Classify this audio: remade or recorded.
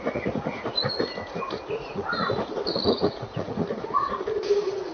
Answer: remade